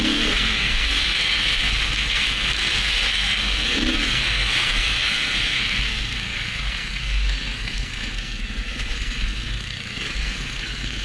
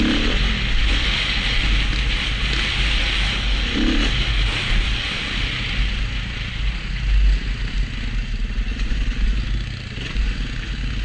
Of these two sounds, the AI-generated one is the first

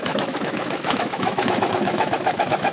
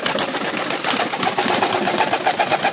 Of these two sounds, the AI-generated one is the first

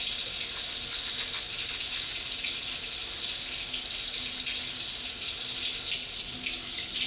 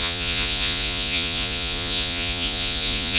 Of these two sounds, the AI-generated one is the second